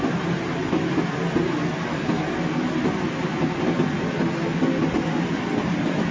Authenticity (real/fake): real